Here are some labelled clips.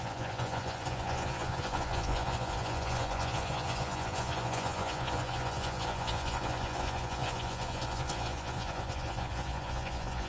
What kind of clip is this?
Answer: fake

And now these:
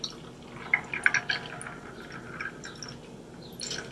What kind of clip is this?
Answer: real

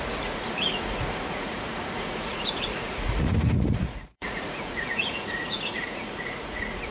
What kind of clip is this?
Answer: fake